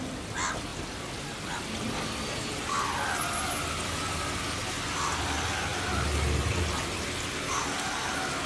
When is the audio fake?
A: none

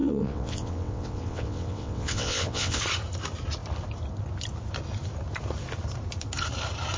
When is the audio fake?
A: 0.0-2.8 (vocoder, WaveNeXt)

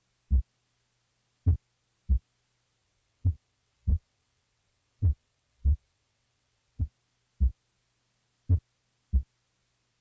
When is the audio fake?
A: 2.8-6.9 (vocoder, WaveNeXt)

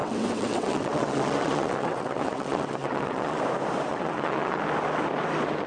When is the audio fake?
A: 0.0-3.4 (vocoder, WaveNeXt); 3.9-4.6

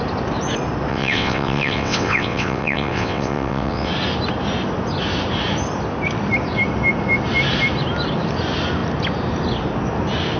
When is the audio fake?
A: 0.9-3.9 (vocoder, WaveNeXt)

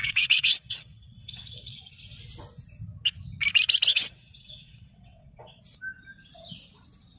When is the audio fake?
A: 0.0-1.8 (vocoder, WaveNeXt); 3.9-5.6